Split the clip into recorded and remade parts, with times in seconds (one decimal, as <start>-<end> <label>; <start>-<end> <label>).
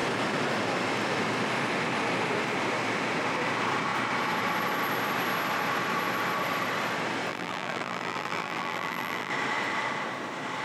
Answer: 0.0-7.3 recorded; 7.3-9.3 remade; 9.3-10.6 recorded